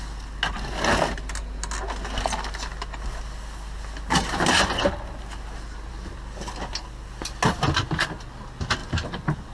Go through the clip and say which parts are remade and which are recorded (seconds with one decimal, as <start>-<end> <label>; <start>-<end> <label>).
0.0-9.5 recorded